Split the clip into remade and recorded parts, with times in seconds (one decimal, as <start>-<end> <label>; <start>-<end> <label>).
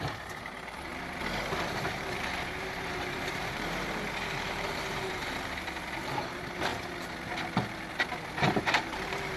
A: 0.0-0.9 remade; 0.9-1.7 recorded; 1.7-5.2 remade; 5.2-6.1 recorded; 6.1-6.7 remade; 6.7-8.6 recorded; 8.6-9.4 remade